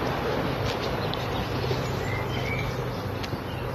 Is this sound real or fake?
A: real